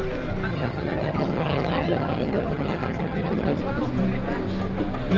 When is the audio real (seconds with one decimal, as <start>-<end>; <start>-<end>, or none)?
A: 0.0-0.5; 3.6-5.2